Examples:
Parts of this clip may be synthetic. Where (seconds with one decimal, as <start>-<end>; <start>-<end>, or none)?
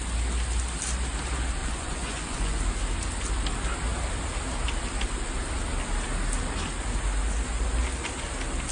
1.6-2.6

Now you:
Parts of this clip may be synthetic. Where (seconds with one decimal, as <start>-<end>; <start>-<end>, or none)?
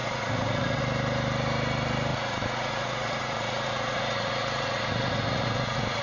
0.0-0.8; 2.1-6.0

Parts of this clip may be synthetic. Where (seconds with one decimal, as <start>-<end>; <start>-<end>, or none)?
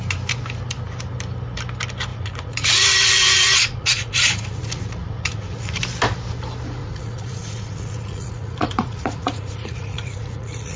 2.1-5.8; 6.8-10.8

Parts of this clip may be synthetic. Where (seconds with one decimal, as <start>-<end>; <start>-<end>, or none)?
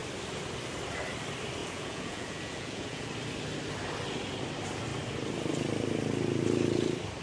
1.6-3.1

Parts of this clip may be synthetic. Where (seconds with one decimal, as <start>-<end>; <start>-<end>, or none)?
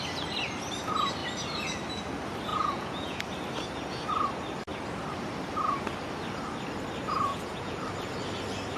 2.5-3.2; 7.3-7.8